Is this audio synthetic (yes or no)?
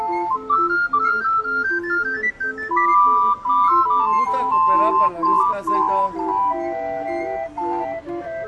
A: no